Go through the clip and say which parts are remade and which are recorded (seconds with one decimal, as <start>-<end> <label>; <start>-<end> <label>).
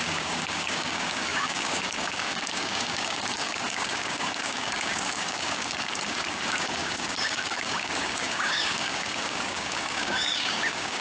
0.0-11.0 remade